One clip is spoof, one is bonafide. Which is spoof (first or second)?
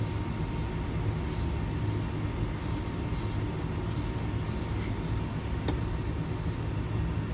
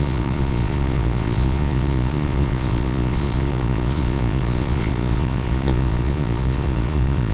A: second